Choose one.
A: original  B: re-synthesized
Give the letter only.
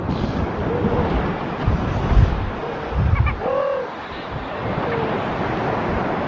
A